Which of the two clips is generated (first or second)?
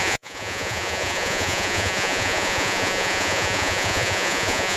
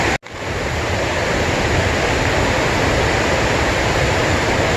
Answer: first